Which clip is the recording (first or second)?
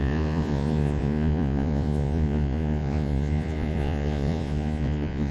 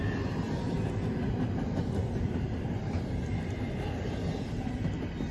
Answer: second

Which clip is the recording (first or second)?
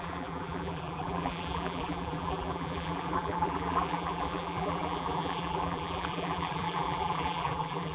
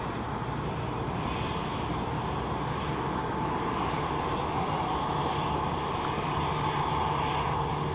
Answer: second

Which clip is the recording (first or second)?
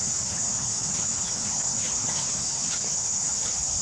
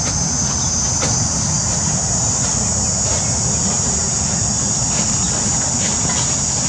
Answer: second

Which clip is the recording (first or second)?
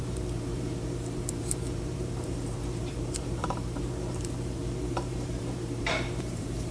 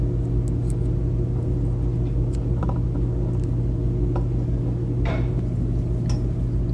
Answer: second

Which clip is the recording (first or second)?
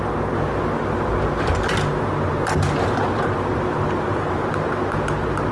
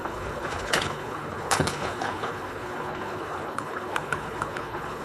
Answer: first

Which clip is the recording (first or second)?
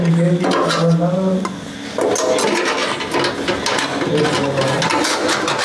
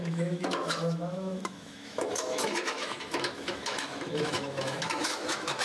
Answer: first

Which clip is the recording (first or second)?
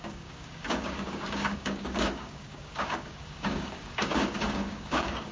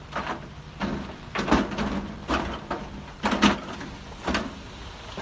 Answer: second